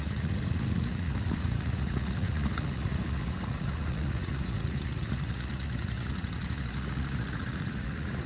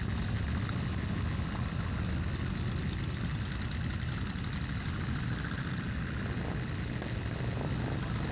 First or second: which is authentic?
second